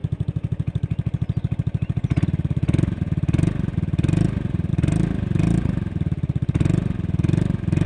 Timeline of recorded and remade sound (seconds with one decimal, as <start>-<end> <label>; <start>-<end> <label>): 0.0-7.9 recorded